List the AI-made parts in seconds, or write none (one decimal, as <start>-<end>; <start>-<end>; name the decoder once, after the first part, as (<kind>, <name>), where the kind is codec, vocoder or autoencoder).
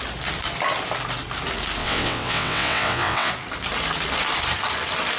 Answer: 1.8-3.3 (vocoder, WaveNeXt)